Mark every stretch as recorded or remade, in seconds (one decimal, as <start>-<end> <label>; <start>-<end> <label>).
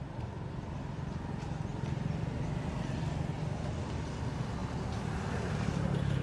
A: 0.0-6.2 recorded